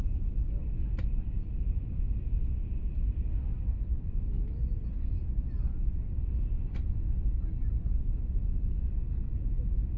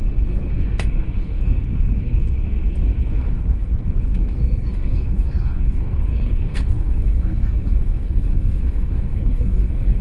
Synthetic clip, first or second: second